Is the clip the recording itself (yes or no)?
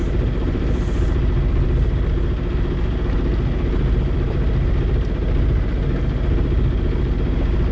yes